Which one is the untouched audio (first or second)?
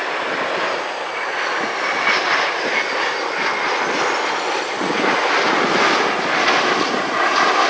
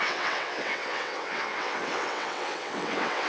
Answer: first